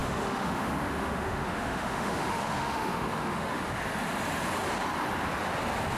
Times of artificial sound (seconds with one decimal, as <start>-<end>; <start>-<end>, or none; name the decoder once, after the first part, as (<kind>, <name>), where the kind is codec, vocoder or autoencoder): 0.0-3.6 (autoencoder, DAC-VAE)